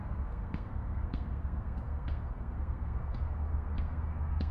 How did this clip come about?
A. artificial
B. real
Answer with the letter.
A